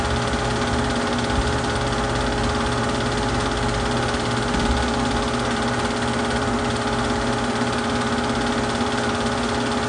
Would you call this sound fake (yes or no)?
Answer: no